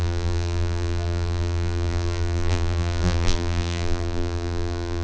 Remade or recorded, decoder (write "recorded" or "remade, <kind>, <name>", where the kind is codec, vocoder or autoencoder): remade, vocoder, BigVGAN v2